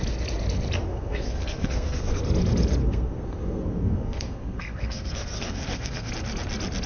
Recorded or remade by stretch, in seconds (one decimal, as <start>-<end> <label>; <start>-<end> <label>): 0.0-0.9 recorded; 0.9-2.2 remade; 2.2-2.8 recorded; 2.8-6.1 remade; 6.1-6.9 recorded